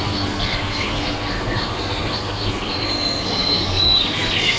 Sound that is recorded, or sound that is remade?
remade